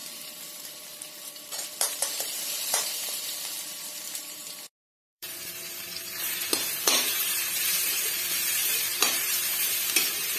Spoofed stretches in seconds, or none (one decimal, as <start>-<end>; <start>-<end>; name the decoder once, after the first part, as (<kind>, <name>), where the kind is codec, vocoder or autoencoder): 0.0-10.4 (vocoder, BigVGAN v2)